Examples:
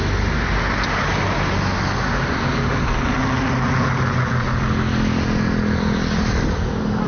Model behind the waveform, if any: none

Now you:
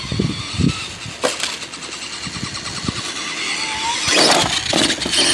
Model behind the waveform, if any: none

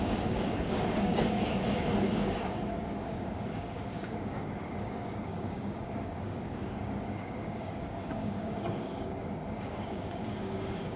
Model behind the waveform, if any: codec, DAC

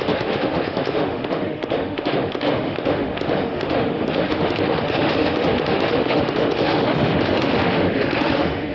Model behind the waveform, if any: autoencoder, DAC-VAE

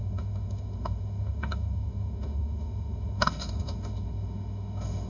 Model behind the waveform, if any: autoencoder, DAC-VAE